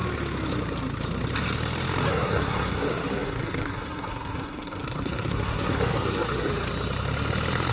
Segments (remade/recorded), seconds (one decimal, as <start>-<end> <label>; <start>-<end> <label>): 0.0-2.1 recorded; 2.1-6.5 remade; 6.5-7.7 recorded

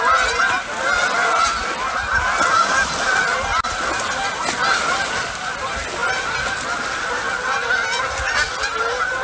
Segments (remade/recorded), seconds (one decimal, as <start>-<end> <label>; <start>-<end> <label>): 0.0-9.2 recorded

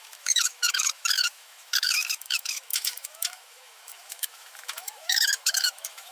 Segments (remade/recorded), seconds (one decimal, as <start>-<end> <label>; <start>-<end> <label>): 0.0-6.1 remade

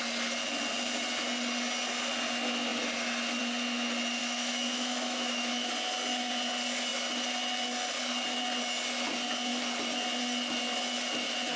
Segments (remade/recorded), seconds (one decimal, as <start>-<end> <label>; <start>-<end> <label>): 0.0-4.2 recorded; 4.2-5.7 remade; 5.7-11.6 recorded

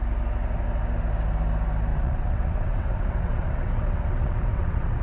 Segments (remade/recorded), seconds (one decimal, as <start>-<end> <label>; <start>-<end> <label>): 0.0-1.9 recorded; 1.9-5.0 remade

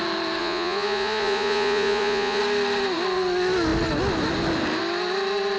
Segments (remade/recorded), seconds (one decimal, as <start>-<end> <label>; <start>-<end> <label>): 0.0-0.4 recorded; 0.4-2.4 remade; 2.4-5.6 recorded